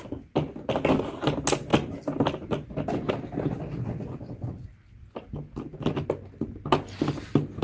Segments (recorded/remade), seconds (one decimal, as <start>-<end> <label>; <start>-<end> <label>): 0.0-7.6 recorded